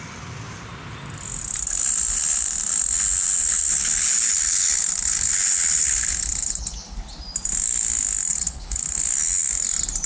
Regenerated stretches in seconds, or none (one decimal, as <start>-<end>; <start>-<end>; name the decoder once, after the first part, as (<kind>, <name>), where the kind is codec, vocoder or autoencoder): 3.4-6.8 (codec, HILCodec); 8.3-9.0

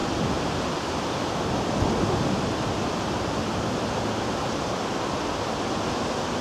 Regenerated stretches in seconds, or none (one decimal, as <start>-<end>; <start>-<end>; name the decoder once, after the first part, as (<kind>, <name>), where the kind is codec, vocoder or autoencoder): 0.0-3.8 (vocoder, BigVGAN v2)

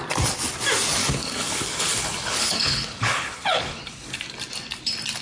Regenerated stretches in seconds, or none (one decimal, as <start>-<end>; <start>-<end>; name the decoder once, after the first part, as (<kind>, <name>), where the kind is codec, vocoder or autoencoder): 1.0-4.1 (codec, HILCodec)

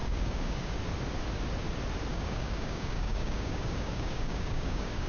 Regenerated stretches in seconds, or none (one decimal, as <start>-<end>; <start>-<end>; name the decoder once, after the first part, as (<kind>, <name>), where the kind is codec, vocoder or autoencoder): 0.0-0.8 (codec, DAC); 2.1-5.1